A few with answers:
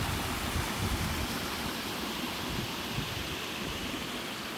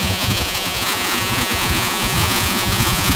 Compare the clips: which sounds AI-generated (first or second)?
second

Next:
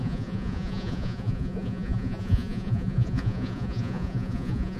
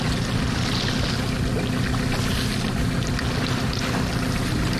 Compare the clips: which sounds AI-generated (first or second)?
first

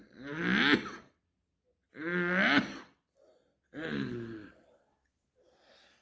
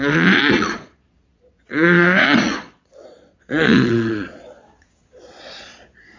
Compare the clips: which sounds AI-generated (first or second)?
second